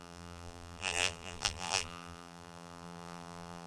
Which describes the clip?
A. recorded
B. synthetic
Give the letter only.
B